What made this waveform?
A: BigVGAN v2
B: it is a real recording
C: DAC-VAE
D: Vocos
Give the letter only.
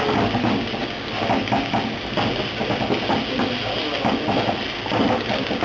B